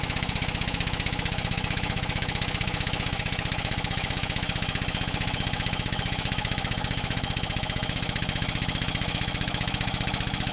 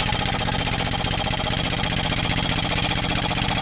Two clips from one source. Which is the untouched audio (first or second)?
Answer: second